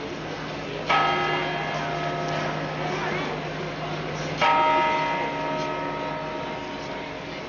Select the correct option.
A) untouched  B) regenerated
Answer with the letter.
A